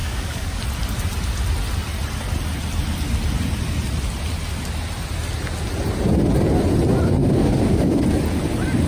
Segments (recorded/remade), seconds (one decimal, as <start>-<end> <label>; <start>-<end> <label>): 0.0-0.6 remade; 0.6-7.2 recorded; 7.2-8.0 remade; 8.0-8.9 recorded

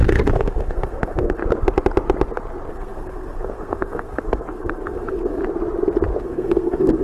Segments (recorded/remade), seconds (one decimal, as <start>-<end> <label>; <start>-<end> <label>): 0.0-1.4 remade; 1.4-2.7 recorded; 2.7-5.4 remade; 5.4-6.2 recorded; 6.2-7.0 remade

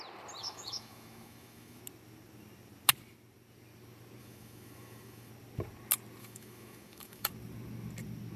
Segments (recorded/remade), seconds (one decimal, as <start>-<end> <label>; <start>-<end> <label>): 0.0-0.4 recorded; 0.4-1.8 remade; 1.8-4.2 recorded; 4.2-5.3 remade; 5.3-6.2 recorded; 6.2-7.3 remade; 7.3-8.4 recorded